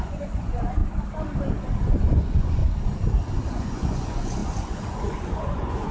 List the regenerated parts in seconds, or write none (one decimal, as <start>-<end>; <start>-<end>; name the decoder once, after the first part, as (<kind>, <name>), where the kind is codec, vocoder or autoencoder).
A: 0.0-0.8 (vocoder, Vocos); 1.8-2.6; 3.5-5.9